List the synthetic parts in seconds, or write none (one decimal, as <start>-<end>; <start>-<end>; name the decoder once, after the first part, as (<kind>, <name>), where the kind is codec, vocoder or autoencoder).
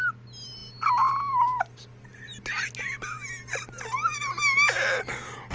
none